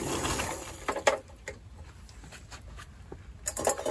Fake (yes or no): no